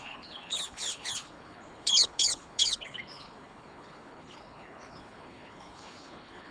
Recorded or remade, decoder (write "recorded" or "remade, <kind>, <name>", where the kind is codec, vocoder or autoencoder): remade, codec, HILCodec